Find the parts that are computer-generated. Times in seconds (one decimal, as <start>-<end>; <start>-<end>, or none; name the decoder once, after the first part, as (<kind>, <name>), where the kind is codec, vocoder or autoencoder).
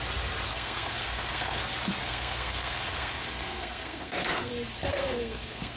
0.5-1.6 (codec, SNAC); 2.0-4.5; 4.9-5.8